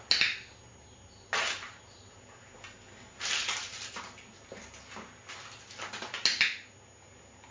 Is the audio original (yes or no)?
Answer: yes